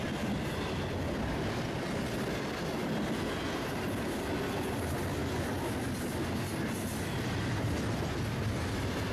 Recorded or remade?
recorded